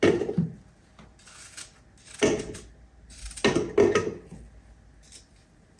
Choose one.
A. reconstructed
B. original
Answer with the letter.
B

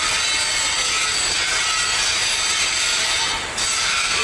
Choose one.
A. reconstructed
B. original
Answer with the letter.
B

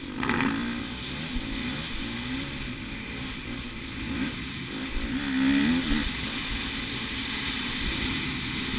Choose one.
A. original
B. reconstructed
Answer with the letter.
A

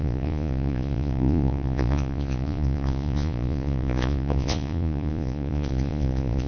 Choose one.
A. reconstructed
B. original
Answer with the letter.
A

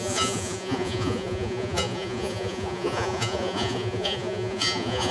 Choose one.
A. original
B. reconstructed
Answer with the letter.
B